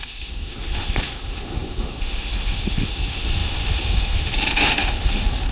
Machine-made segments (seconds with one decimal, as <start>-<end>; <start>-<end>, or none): 0.0-5.5